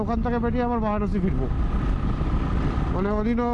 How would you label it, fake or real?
real